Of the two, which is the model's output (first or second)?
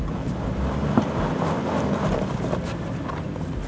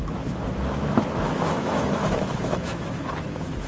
second